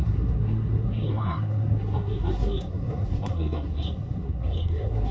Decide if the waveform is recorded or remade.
remade